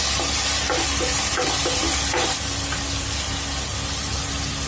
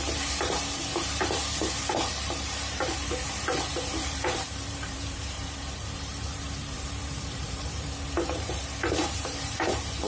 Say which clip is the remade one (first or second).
second